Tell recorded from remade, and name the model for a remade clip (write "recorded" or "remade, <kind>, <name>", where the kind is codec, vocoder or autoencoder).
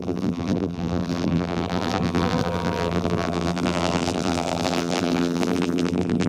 remade, vocoder, BigVGAN v2